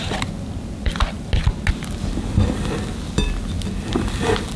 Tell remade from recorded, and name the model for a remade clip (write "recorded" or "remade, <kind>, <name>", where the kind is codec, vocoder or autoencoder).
recorded